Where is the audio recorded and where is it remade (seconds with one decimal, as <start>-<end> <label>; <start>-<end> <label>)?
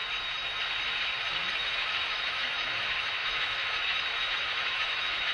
0.0-1.5 recorded; 1.5-5.3 remade